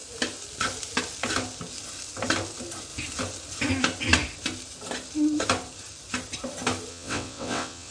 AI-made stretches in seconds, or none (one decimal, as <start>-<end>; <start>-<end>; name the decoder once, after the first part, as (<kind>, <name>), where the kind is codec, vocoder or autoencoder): 6.9-7.9 (vocoder, WaveNeXt)